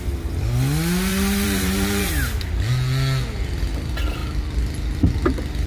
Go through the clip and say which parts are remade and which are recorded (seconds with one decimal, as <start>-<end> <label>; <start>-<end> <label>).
0.0-1.1 recorded; 1.1-2.1 remade; 2.1-5.7 recorded

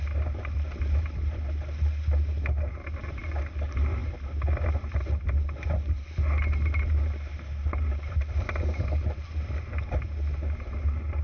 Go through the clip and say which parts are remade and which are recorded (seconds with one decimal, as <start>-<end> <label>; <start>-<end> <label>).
0.0-11.2 recorded

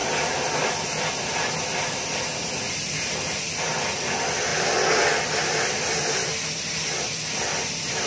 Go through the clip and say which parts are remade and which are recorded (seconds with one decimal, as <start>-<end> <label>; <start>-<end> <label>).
0.0-8.1 recorded